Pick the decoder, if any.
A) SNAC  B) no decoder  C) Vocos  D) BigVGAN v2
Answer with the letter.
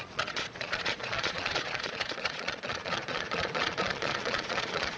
C